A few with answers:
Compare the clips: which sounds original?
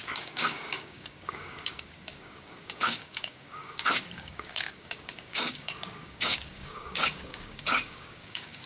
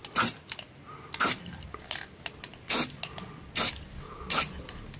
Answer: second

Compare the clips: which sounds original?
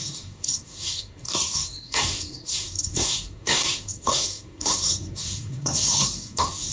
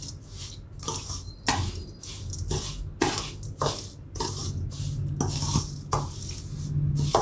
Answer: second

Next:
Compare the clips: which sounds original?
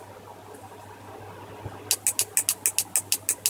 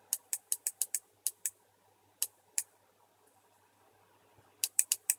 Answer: first